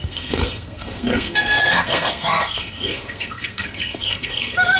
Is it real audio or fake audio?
fake